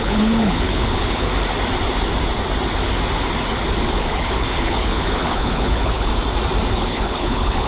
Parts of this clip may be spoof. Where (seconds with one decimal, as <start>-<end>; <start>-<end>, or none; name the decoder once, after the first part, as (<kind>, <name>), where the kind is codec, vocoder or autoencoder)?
0.0-1.3 (codec, HILCodec); 3.9-6.1; 6.7-7.7